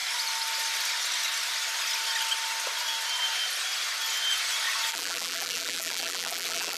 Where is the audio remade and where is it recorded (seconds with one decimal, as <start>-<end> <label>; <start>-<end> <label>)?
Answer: 0.0-4.9 recorded; 4.9-6.8 remade